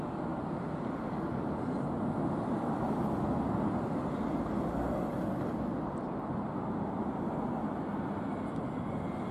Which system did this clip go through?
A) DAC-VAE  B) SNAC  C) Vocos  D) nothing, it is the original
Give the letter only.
D